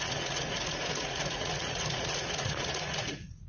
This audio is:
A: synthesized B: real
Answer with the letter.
A